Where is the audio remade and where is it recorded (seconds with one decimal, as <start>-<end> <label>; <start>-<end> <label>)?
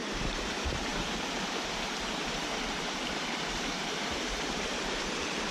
0.0-5.5 remade